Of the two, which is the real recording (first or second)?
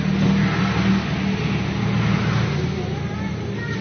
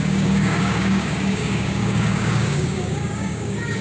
first